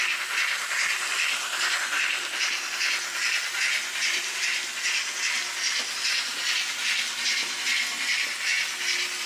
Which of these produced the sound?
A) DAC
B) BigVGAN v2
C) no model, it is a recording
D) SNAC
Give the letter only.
C